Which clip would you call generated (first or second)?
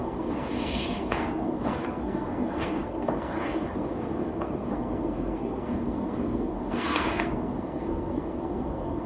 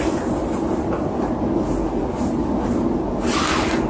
first